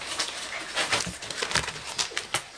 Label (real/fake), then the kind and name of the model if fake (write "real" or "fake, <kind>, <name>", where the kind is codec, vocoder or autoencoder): real